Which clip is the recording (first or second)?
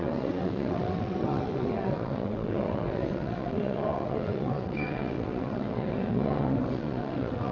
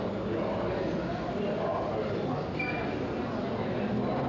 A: second